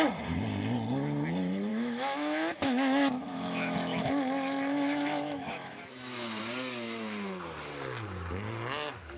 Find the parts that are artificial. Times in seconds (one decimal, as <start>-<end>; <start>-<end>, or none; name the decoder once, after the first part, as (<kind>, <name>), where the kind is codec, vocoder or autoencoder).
1.7-6.4 (autoencoder, DAC-VAE)